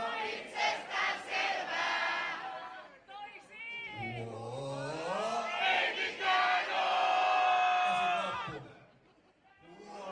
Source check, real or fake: real